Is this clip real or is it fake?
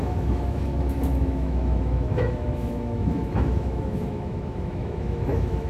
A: fake